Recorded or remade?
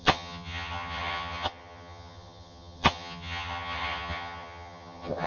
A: remade